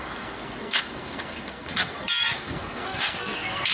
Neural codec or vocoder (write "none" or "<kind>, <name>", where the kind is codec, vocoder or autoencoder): codec, SNAC